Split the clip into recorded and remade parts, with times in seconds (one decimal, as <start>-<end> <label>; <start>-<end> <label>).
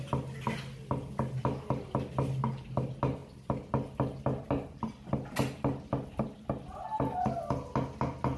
0.0-8.4 recorded